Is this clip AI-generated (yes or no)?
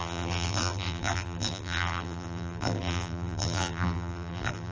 yes